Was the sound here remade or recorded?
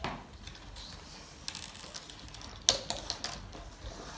recorded